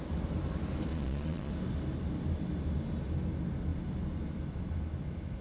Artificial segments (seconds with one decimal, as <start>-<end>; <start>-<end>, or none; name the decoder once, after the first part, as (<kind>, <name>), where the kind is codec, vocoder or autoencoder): 0.9-1.5 (vocoder, Vocos)